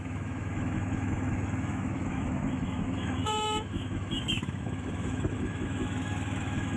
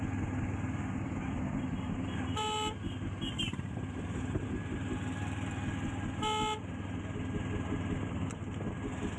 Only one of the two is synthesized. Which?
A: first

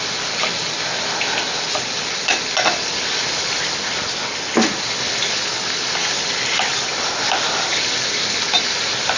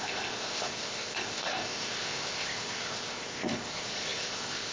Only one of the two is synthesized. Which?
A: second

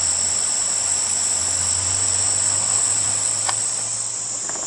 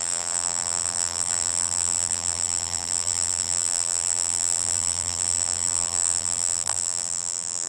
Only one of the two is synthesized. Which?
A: second